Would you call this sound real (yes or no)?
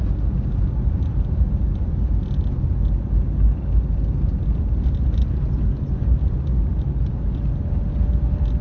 yes